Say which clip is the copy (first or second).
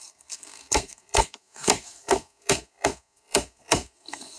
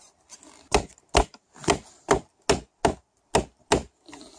first